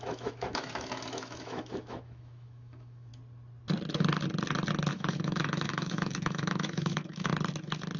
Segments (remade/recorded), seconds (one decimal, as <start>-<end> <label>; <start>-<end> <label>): 0.0-3.1 remade; 3.1-4.9 recorded; 4.9-7.3 remade; 7.3-8.0 recorded